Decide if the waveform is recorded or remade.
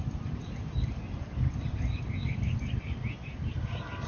recorded